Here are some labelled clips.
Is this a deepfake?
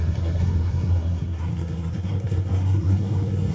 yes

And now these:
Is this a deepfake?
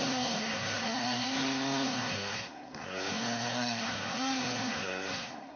yes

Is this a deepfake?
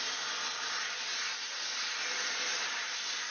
no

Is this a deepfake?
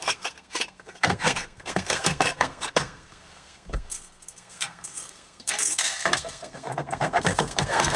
yes